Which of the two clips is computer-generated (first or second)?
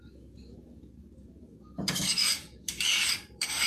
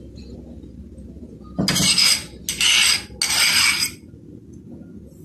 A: first